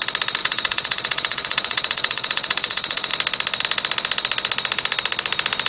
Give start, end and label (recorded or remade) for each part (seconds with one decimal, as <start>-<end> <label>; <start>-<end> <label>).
0.0-0.4 recorded; 0.4-3.1 remade; 3.1-5.7 recorded